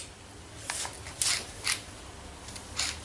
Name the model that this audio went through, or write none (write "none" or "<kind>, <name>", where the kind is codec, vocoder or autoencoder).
none